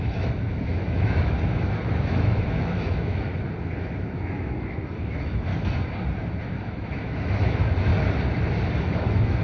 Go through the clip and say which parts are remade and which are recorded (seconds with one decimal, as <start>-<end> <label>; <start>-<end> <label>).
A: 0.0-3.3 remade; 3.3-3.8 recorded; 3.8-5.5 remade; 5.5-6.4 recorded; 6.4-7.9 remade; 7.9-8.8 recorded; 8.8-9.4 remade

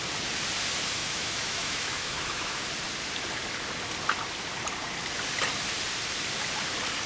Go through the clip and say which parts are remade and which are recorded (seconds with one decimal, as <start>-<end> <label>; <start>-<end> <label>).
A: 0.0-1.0 recorded; 1.0-2.7 remade; 2.7-7.1 recorded

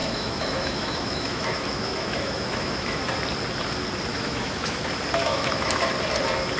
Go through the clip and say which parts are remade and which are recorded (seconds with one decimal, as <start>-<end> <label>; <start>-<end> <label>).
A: 0.0-3.1 remade; 3.1-4.1 recorded; 4.1-4.8 remade; 4.8-5.2 recorded; 5.2-5.9 remade; 5.9-6.6 recorded

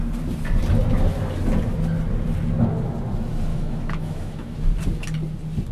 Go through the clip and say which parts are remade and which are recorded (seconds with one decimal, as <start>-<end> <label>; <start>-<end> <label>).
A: 0.0-3.5 recorded; 3.5-4.6 remade; 4.6-5.7 recorded

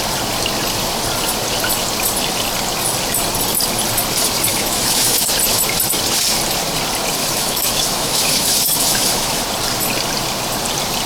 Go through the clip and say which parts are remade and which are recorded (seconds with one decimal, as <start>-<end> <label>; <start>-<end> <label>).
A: 0.0-4.5 recorded; 4.5-5.3 remade; 5.3-7.2 recorded; 7.2-9.4 remade; 9.4-11.1 recorded